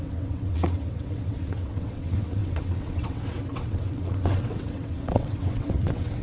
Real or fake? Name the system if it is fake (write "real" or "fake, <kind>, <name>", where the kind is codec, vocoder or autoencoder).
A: fake, vocoder, WaveNeXt